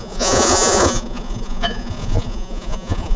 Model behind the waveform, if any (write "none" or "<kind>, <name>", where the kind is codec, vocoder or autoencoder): vocoder, Vocos